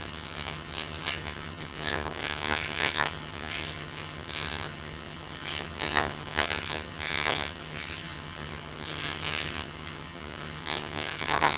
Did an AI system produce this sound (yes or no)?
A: yes